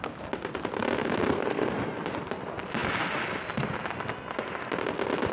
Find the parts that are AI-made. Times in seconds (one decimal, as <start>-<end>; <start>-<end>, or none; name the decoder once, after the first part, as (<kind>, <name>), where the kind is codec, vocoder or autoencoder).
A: 1.2-1.7 (codec, SNAC)